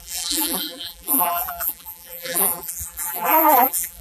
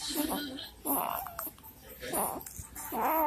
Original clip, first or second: second